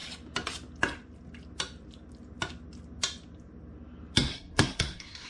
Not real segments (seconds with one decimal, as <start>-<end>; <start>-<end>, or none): 4.3-5.3